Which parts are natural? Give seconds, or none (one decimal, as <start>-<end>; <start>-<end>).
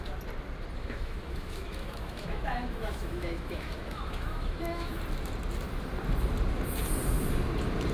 0.0-0.8; 5.0-7.9